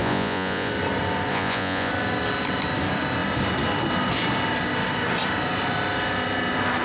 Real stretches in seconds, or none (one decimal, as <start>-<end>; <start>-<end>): 0.7-1.3; 1.9-6.8